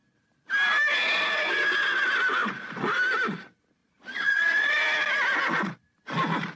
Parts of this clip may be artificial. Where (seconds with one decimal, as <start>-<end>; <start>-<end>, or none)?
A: 3.8-4.7